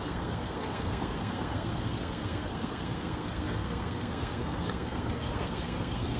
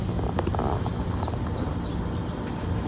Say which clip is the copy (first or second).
first